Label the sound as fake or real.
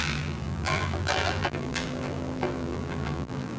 fake